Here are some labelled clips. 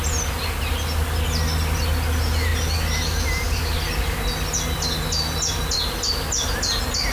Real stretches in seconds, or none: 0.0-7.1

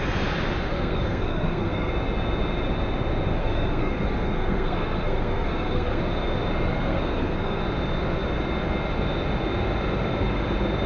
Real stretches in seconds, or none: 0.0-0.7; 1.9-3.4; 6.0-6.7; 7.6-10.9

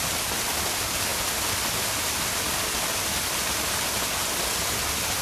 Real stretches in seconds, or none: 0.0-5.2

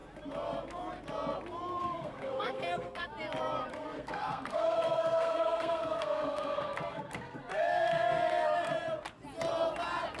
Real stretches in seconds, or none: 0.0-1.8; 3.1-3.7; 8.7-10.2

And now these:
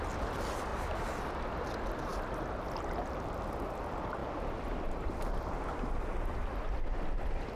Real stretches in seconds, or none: 0.0-7.6

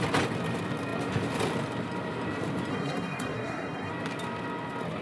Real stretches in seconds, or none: 0.0-2.7; 3.9-5.0